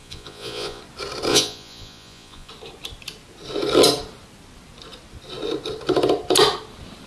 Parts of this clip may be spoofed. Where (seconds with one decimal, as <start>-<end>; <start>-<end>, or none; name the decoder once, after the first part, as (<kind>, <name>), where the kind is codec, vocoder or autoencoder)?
0.0-0.8 (vocoder, Vocos); 1.3-2.5